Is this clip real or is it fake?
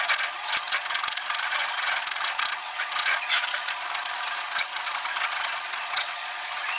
fake